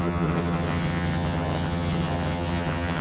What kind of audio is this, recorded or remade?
remade